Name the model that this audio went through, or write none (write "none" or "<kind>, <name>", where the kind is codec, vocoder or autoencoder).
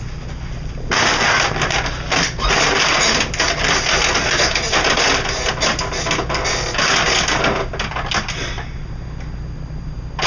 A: none